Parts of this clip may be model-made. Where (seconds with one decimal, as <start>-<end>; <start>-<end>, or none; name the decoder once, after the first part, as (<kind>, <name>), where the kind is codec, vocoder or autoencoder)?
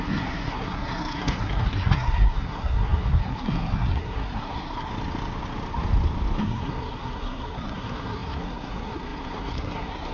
0.0-4.9 (codec, SNAC); 6.4-10.1